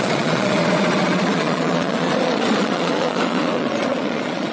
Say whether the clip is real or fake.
fake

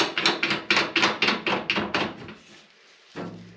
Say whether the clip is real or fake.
real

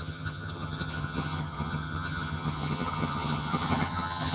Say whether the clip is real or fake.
fake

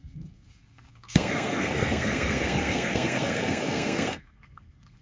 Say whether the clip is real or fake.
fake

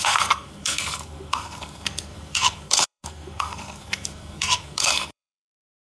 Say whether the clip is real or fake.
fake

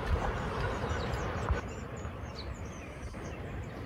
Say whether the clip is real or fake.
fake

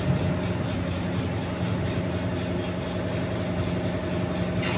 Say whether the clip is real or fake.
real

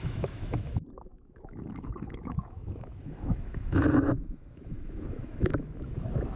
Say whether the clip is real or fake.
fake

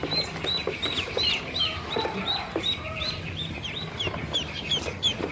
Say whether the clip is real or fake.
real